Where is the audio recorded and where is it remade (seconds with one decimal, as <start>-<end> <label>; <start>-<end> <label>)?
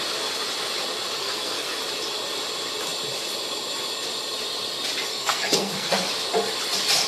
0.0-1.2 recorded; 1.2-1.8 remade; 1.8-5.1 recorded; 5.1-6.1 remade; 6.1-7.1 recorded